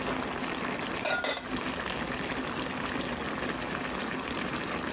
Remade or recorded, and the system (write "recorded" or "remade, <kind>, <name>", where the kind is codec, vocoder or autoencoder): recorded